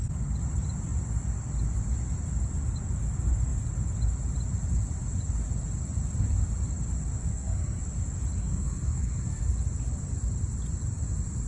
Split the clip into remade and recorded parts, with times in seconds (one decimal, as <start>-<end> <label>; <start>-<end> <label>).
0.0-7.3 recorded; 7.3-7.8 remade; 7.8-8.4 recorded; 8.4-9.5 remade; 9.5-11.5 recorded